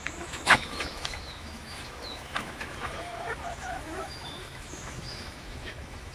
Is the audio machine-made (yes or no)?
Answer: yes